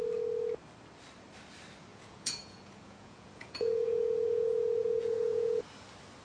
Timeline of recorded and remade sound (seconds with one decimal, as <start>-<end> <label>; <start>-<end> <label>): 0.0-1.9 recorded; 1.9-5.6 remade; 5.6-6.2 recorded